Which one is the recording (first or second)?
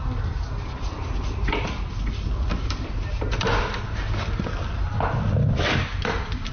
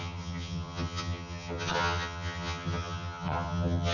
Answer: first